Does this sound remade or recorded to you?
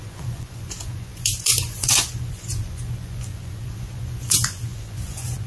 remade